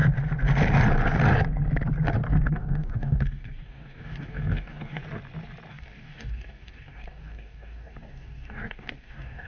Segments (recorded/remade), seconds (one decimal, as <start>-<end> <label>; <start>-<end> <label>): 0.0-2.3 recorded; 2.3-5.0 remade; 5.0-5.7 recorded; 5.7-9.5 remade